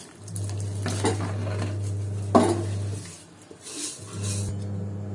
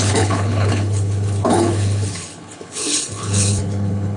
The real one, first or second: first